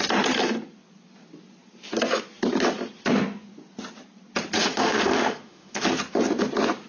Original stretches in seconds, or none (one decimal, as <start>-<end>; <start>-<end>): 0.0-4.6; 5.8-6.9